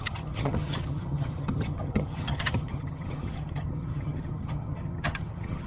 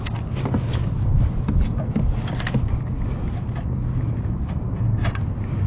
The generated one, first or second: first